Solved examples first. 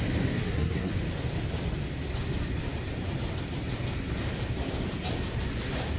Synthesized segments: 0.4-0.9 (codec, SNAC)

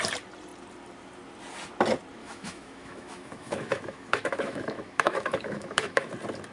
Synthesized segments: 2.2-6.1 (autoencoder, DAC-VAE)

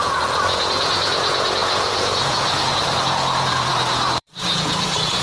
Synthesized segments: 0.0-5.2 (vocoder, Vocos)

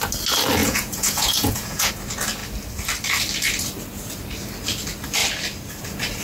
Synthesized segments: 0.6-1.9 (vocoder, Vocos)

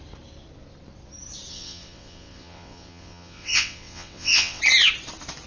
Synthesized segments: 1.5-4.6 (vocoder, WaveNeXt)

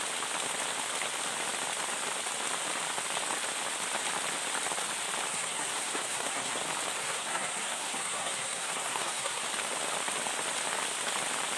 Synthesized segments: 5.3-6.6 (codec, SNAC); 7.0-9.4

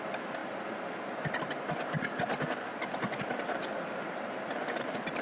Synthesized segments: 0.0-0.4 (vocoder, BigVGAN v2); 3.4-5.2